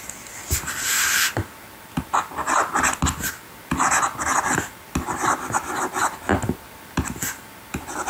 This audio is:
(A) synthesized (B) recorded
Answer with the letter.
B